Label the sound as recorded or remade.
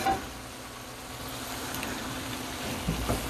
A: recorded